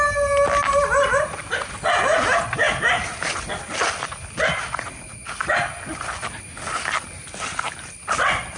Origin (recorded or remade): recorded